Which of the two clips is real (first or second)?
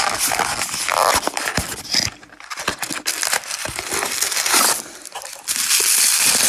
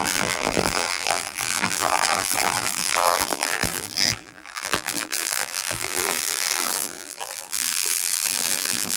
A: first